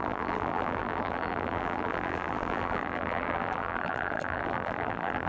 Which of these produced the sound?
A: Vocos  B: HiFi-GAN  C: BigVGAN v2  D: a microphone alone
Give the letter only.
C